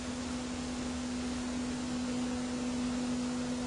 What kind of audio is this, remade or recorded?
recorded